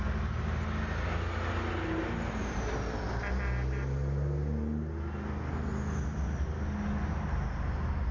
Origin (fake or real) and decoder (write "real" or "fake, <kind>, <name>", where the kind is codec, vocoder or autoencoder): real